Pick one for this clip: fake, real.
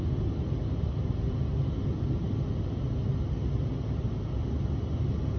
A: real